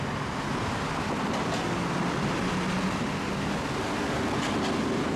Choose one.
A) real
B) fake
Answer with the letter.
A